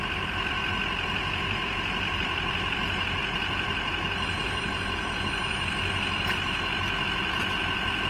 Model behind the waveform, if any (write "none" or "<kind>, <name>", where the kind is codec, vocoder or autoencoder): none